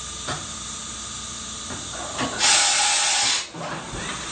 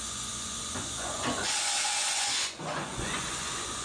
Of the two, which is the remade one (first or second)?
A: second